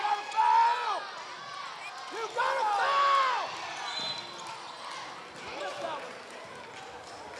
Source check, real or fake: real